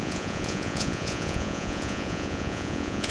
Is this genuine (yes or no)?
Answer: no